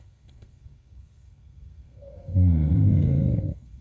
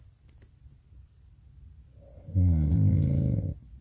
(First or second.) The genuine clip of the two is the second